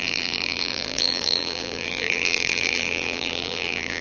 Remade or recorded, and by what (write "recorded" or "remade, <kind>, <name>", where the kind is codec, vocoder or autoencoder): remade, vocoder, BigVGAN v2